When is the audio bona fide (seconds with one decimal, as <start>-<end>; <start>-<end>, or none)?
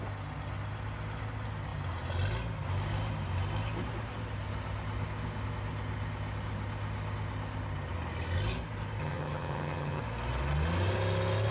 0.0-9.0; 10.0-11.5